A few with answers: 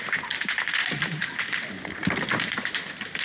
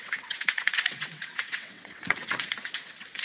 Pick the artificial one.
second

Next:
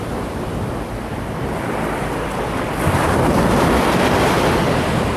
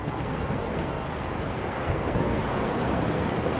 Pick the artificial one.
second